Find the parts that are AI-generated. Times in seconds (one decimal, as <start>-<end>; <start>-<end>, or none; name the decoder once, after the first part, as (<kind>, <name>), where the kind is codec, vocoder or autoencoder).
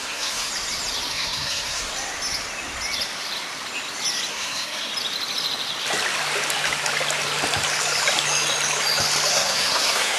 0.0-0.5 (codec, SNAC); 1.1-1.9; 4.3-4.9; 9.3-10.2